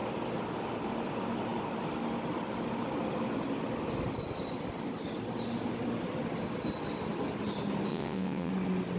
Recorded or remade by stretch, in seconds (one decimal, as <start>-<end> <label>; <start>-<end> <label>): 0.0-7.9 recorded; 7.9-8.5 remade; 8.5-9.0 recorded